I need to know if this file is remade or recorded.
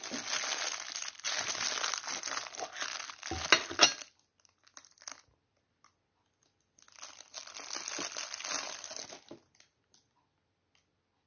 recorded